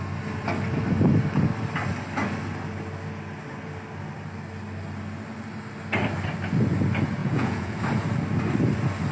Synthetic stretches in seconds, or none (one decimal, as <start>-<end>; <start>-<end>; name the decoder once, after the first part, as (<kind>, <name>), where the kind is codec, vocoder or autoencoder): 7.2-7.8 (vocoder, Vocos)